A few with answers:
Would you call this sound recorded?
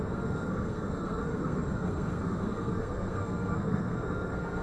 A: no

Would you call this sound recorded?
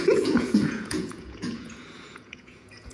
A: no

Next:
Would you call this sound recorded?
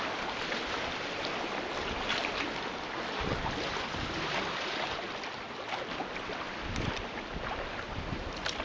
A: yes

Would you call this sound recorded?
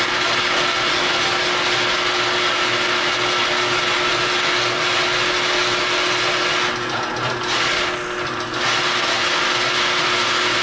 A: yes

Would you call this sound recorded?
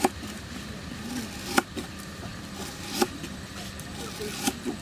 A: no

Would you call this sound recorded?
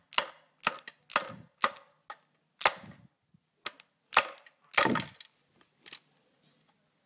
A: yes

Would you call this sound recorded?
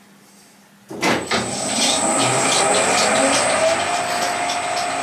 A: yes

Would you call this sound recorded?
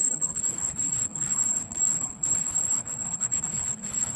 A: no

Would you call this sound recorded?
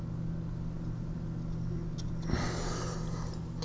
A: yes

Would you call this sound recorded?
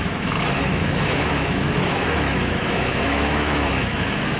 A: no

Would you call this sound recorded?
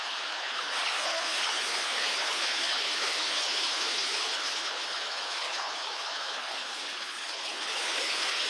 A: no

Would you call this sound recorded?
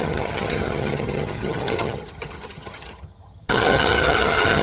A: no